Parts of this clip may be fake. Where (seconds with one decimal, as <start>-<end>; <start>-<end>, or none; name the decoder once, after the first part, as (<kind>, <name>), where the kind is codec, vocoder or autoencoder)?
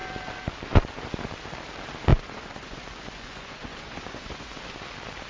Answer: 2.1-4.5 (vocoder, Vocos)